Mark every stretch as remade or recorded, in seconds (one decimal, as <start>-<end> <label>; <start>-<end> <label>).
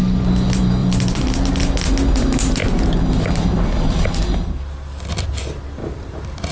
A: 0.0-0.8 recorded; 0.8-1.5 remade; 1.5-5.8 recorded; 5.8-6.5 remade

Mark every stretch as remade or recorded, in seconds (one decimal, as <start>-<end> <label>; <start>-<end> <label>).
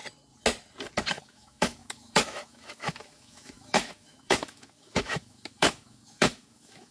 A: 0.0-1.1 recorded; 1.1-6.9 remade